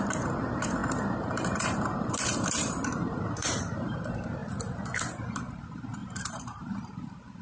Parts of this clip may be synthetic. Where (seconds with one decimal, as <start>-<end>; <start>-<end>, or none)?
0.0-4.4; 5.4-7.4